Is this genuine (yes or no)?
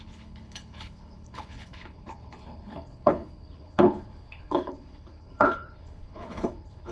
no